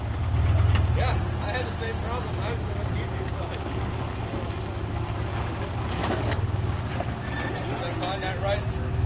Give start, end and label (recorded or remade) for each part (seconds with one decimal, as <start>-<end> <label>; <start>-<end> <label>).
0.0-6.0 recorded; 6.0-6.9 remade; 6.9-9.1 recorded